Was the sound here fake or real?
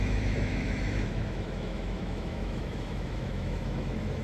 fake